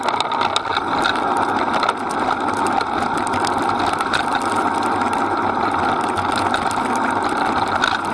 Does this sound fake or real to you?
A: real